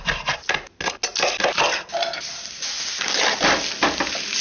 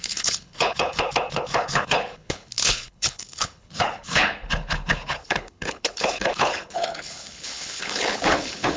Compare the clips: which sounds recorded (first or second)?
first